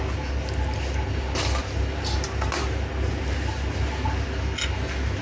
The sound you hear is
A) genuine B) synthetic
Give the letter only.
A